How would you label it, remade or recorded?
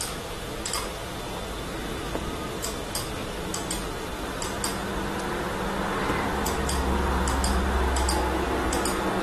recorded